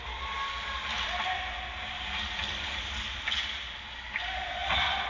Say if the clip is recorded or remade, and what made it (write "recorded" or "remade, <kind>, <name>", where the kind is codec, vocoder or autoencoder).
recorded